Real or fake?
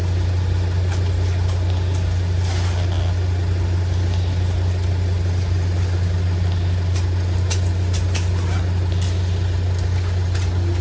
real